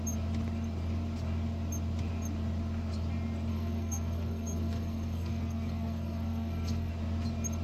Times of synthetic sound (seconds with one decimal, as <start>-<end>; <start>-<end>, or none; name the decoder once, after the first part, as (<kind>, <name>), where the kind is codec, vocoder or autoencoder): 3.5-6.9 (codec, SNAC)